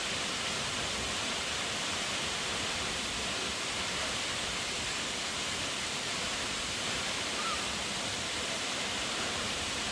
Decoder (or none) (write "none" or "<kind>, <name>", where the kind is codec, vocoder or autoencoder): vocoder, BigVGAN v2